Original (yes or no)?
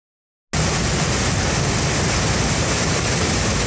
yes